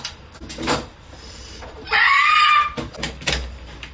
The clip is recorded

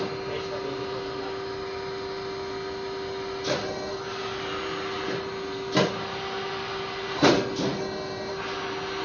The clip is recorded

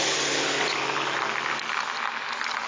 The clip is recorded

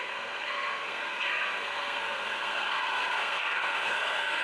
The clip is remade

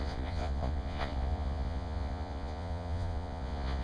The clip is remade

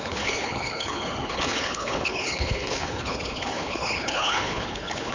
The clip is remade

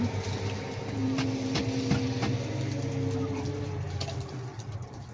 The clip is recorded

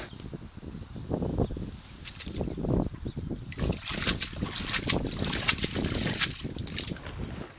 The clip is recorded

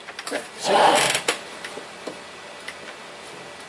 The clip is recorded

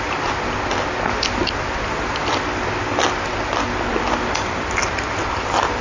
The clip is recorded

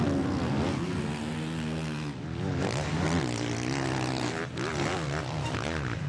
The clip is recorded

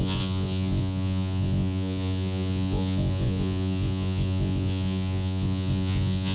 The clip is remade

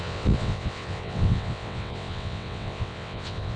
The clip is remade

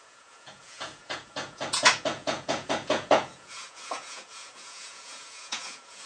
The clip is remade